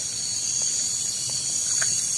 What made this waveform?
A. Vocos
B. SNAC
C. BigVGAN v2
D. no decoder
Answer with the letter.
D